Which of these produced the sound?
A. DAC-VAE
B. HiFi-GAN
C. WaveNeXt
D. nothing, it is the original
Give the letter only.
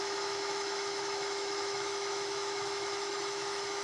A